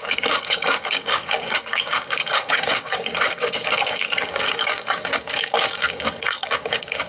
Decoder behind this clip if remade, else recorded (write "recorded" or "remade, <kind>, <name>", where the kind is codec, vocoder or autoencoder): remade, codec, DAC